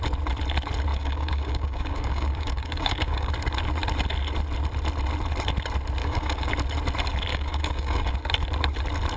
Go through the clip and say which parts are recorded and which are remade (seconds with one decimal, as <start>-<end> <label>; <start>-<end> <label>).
0.0-0.9 recorded; 0.9-3.3 remade; 3.3-6.0 recorded; 6.0-6.5 remade; 6.5-7.3 recorded; 7.3-8.1 remade; 8.1-9.2 recorded